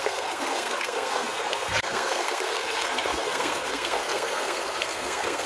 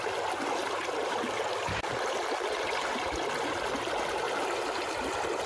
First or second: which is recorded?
second